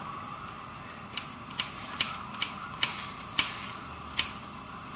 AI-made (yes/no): yes